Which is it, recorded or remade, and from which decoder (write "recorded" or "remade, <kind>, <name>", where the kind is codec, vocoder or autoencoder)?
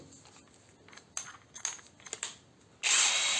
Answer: recorded